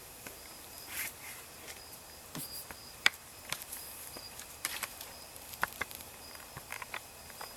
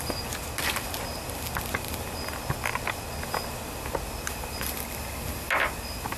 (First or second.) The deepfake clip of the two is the first